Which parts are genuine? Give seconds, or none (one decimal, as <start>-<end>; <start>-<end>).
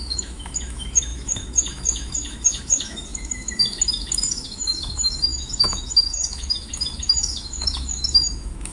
none